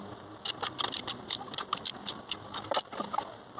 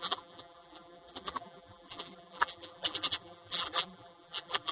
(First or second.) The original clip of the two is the first